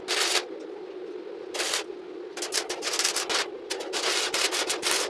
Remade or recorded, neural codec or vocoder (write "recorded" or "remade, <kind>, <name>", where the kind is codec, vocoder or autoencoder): recorded